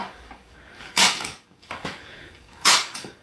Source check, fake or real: fake